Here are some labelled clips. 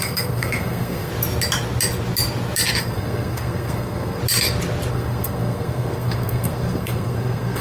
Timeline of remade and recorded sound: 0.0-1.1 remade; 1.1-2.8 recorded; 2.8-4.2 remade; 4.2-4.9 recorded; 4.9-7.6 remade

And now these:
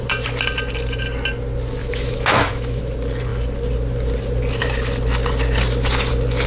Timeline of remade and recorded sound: 0.0-1.8 recorded; 1.8-2.8 remade; 2.8-6.5 recorded

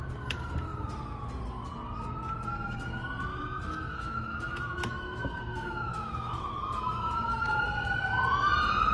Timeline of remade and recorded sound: 0.0-3.3 recorded; 3.3-7.6 remade; 7.6-8.9 recorded

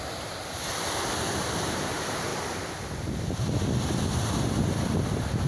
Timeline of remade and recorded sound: 0.0-0.4 remade; 0.4-1.4 recorded; 1.4-2.3 remade; 2.3-5.5 recorded

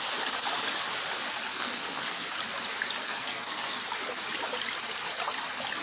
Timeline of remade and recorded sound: 0.0-1.5 recorded; 1.5-2.3 remade; 2.3-3.0 recorded; 3.0-3.8 remade; 3.8-5.8 recorded